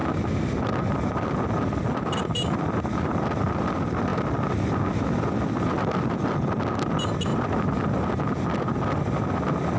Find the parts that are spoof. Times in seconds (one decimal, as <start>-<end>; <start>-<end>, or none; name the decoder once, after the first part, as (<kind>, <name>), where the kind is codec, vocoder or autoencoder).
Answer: none